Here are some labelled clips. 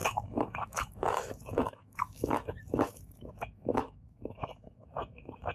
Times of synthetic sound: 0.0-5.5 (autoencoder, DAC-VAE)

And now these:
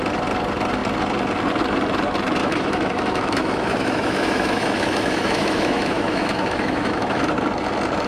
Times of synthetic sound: 2.4-7.2 (autoencoder, DAC-VAE)